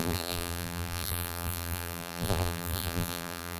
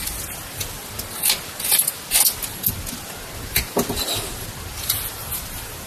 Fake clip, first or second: first